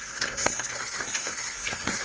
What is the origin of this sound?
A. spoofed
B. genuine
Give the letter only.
A